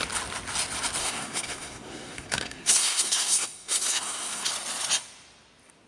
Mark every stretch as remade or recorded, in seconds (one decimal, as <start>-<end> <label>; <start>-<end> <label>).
0.0-1.0 recorded; 1.0-4.5 remade; 4.5-5.9 recorded